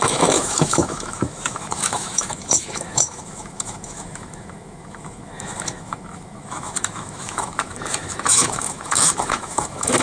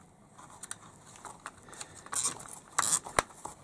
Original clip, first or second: second